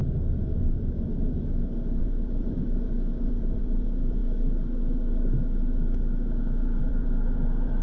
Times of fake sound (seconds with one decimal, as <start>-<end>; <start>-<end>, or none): 2.0-4.2; 6.8-7.8